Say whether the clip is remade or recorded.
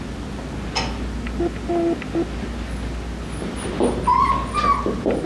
recorded